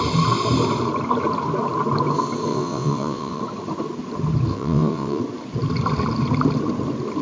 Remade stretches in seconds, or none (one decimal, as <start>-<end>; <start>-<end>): 2.5-3.4; 4.5-5.2